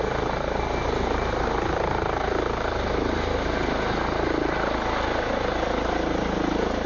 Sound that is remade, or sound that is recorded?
recorded